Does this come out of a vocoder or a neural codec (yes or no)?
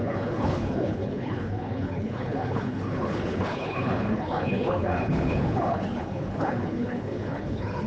yes